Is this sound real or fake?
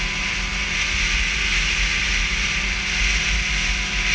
real